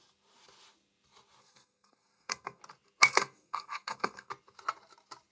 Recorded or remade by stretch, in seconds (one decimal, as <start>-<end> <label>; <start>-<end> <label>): 0.0-1.4 recorded; 1.4-2.6 remade; 2.6-3.1 recorded; 3.1-4.3 remade; 4.3-5.3 recorded